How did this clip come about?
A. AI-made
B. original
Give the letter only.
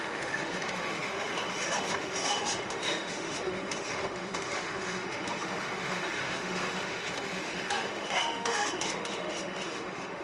A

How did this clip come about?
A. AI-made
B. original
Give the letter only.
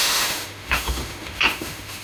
A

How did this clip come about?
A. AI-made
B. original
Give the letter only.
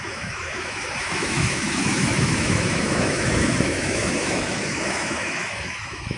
A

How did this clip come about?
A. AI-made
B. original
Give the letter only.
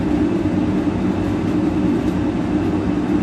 B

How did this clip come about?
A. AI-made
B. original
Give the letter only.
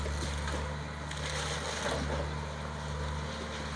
B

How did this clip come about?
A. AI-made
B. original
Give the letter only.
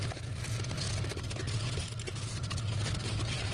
B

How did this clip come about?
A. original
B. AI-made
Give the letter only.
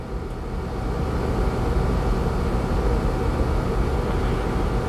A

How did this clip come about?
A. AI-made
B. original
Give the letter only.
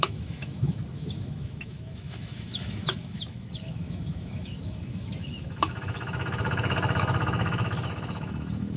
A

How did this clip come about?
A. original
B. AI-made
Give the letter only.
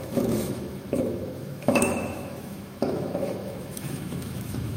B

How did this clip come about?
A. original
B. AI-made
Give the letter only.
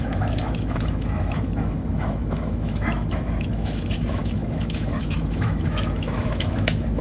B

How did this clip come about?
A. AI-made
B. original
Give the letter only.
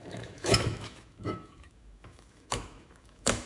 A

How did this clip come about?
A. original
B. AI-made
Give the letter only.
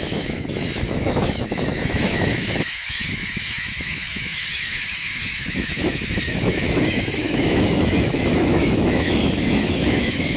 B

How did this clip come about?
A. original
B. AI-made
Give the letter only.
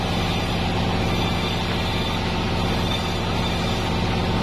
A